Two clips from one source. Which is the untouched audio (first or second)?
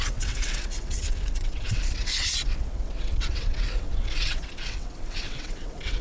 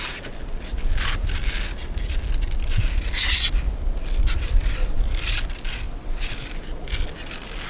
second